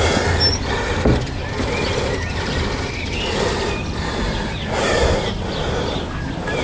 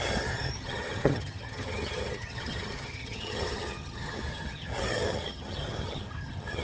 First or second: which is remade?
second